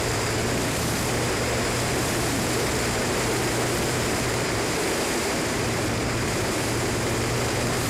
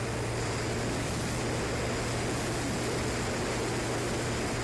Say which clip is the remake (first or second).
first